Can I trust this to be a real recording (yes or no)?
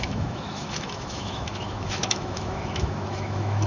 no